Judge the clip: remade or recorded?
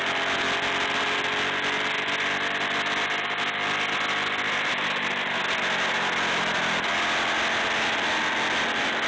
recorded